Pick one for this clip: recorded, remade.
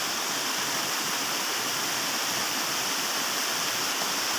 remade